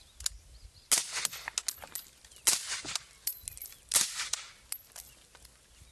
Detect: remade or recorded recorded